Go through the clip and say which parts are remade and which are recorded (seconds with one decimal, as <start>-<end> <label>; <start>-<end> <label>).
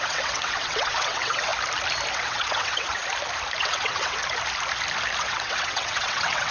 0.0-1.5 remade; 1.5-2.1 recorded; 2.1-3.0 remade; 3.0-3.6 recorded; 3.6-4.2 remade; 4.2-5.2 recorded; 5.2-6.5 remade